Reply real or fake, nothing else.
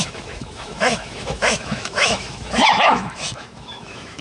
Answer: fake